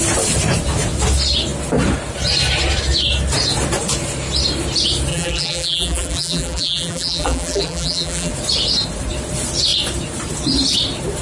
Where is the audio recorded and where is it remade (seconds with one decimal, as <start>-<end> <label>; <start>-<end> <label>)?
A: 0.0-5.1 recorded; 5.1-8.3 remade; 8.3-11.2 recorded